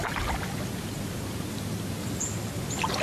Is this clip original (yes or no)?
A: yes